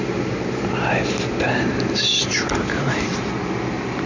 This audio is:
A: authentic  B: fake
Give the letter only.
A